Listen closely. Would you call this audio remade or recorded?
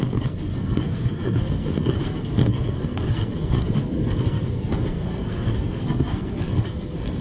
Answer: remade